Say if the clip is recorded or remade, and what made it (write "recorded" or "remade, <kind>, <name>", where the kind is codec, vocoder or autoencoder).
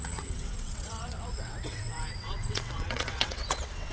remade, vocoder, WaveNeXt